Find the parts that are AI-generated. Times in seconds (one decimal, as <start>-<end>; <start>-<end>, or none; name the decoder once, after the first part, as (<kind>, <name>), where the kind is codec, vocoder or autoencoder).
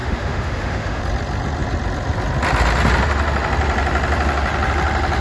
0.0-1.0 (autoencoder, DAC-VAE)